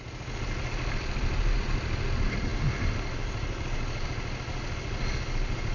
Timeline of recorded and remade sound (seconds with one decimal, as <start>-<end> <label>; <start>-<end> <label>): 0.0-5.7 recorded